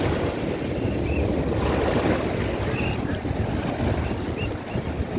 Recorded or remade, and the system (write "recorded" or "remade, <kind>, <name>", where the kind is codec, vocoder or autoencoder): recorded